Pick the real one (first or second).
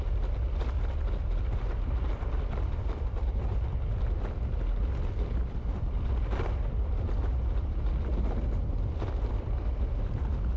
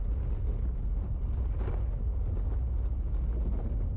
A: second